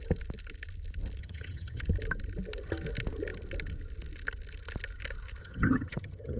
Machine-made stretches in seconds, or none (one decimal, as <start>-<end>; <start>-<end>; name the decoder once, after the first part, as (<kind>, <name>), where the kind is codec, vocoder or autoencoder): 1.2-1.8 (vocoder, HiFi-GAN); 5.4-6.4